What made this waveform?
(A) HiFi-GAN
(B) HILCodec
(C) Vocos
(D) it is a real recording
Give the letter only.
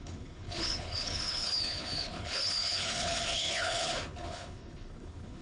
B